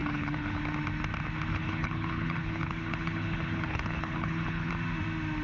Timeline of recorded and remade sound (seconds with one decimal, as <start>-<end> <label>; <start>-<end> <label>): 0.0-0.6 remade; 0.6-1.5 recorded; 1.5-4.7 remade; 4.7-5.4 recorded